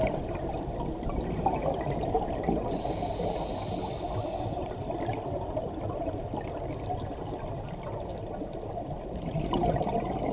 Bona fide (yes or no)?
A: yes